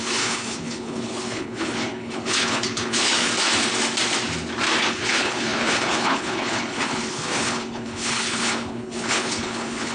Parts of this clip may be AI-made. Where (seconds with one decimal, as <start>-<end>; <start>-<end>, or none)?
0.0-3.3; 4.9-9.9